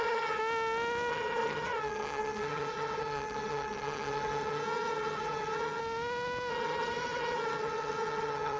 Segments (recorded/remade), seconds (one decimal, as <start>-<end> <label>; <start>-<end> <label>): 0.0-0.4 remade; 0.4-1.1 recorded; 1.1-5.8 remade; 5.8-6.5 recorded; 6.5-8.6 remade